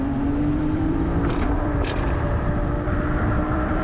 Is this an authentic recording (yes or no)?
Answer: no